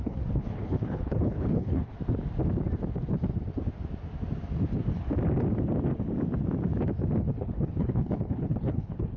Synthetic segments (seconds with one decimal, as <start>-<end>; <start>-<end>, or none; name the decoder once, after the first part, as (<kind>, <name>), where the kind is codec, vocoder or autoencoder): 0.0-1.9 (codec, HILCodec); 7.2-9.2